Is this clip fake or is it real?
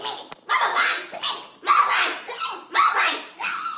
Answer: real